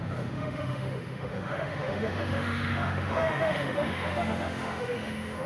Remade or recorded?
remade